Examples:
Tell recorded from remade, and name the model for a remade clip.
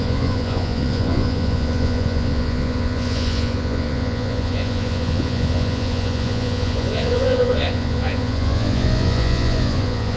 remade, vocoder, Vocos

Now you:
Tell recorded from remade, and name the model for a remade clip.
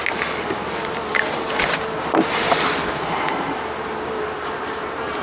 recorded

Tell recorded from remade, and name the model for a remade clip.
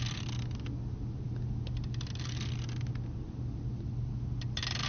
recorded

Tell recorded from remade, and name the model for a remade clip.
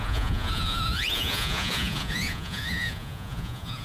remade, vocoder, Vocos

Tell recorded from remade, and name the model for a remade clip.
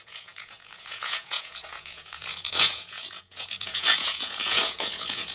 remade, vocoder, Vocos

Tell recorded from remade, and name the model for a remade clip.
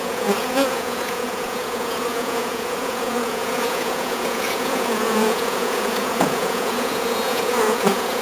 remade, vocoder, Vocos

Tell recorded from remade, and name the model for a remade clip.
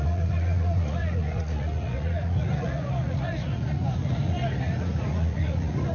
remade, vocoder, Vocos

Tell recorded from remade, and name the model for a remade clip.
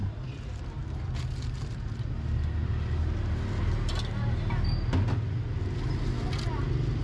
recorded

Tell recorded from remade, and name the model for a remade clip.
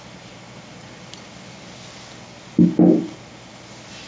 recorded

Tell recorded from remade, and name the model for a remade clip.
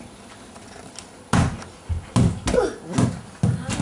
recorded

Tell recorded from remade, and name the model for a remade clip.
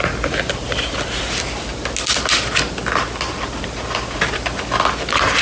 recorded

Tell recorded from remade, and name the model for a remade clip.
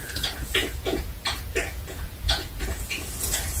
remade, vocoder, Vocos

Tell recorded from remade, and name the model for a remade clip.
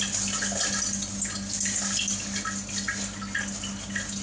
recorded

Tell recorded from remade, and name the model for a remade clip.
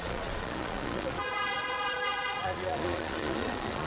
remade, vocoder, Vocos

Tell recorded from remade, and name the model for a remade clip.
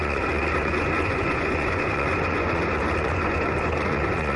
remade, vocoder, Vocos